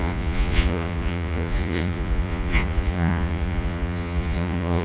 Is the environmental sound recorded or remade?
remade